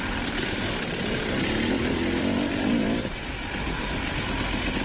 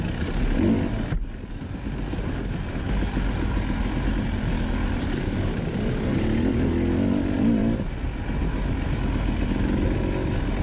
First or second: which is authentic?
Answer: second